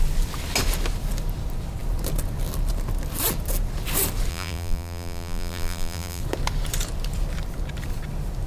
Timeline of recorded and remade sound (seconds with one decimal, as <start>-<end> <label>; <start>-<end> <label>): 0.0-4.3 recorded; 4.3-6.2 remade; 6.2-8.5 recorded